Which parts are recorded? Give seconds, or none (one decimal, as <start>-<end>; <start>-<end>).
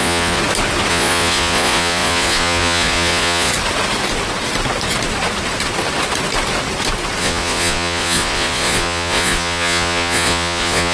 0.4-0.9; 3.5-7.2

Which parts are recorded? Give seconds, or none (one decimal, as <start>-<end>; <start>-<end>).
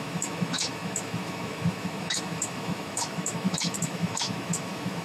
none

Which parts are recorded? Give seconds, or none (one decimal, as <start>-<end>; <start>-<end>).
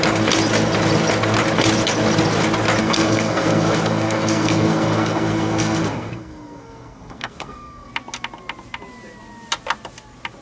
0.0-2.8; 7.9-10.4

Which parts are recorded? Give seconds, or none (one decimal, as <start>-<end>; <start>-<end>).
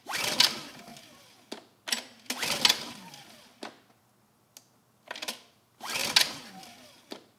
0.0-7.4